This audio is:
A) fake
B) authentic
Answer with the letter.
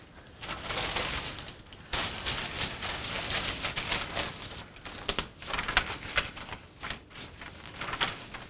B